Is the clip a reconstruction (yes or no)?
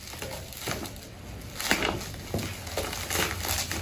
no